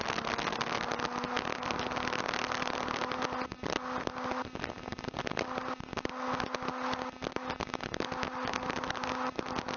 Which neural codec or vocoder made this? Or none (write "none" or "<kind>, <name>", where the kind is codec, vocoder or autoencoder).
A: none